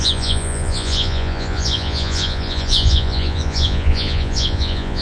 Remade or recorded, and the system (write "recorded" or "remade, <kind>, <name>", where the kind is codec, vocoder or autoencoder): remade, vocoder, Vocos